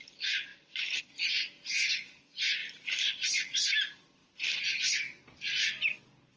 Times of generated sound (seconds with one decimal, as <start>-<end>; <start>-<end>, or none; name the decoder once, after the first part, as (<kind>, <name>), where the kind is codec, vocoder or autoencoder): 0.5-1.0 (vocoder, BigVGAN v2)